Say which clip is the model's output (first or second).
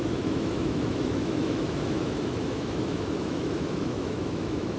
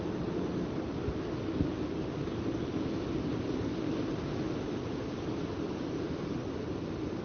first